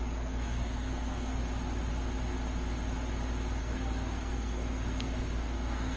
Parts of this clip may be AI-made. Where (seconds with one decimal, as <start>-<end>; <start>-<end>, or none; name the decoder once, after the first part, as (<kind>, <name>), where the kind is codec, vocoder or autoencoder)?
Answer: 0.0-1.4 (codec, SNAC); 3.6-6.0